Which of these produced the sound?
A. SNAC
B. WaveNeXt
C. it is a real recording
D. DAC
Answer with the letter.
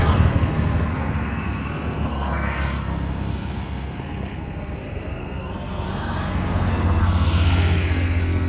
A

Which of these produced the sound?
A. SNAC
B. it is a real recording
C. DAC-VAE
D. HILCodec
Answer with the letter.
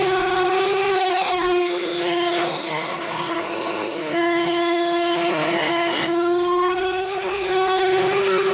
A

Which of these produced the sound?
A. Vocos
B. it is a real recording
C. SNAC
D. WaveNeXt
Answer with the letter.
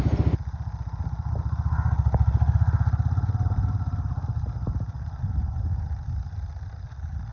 B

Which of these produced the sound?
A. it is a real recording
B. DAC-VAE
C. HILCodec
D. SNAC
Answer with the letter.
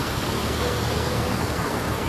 D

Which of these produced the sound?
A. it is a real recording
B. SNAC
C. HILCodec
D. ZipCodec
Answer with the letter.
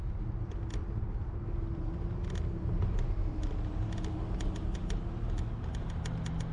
A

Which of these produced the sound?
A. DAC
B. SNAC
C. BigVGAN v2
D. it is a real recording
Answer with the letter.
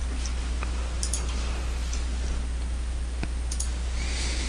D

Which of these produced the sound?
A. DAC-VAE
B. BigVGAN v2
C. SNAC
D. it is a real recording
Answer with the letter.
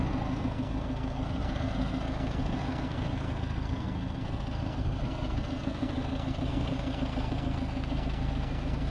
C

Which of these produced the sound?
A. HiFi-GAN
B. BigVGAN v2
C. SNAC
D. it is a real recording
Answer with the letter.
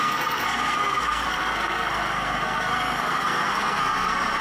C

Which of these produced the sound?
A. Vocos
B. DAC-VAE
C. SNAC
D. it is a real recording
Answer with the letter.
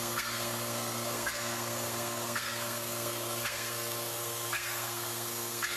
C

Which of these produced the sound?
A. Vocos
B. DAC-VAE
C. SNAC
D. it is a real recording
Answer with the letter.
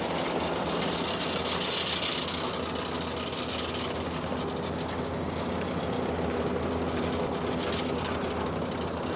D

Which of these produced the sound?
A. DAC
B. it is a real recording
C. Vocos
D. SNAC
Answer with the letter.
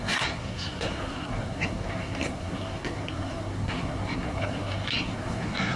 D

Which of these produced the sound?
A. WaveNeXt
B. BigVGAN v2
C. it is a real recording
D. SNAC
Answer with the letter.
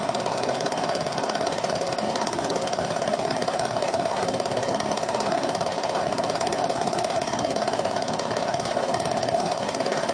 D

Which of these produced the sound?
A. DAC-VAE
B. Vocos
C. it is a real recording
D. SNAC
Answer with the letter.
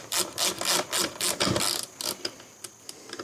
C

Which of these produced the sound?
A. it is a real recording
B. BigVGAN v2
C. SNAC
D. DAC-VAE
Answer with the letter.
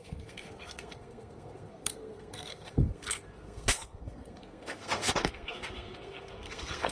C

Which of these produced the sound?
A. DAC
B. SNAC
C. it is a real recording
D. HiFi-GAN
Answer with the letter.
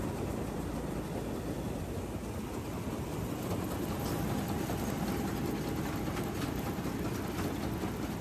C